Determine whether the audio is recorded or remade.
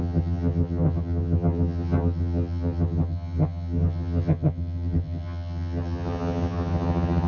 remade